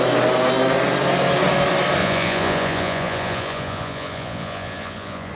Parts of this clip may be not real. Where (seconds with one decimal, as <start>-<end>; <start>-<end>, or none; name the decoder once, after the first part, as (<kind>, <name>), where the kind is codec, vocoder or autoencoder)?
2.0-5.3 (vocoder, Vocos)